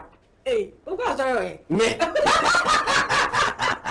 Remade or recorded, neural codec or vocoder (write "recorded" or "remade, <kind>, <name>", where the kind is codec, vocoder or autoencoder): remade, vocoder, WaveNeXt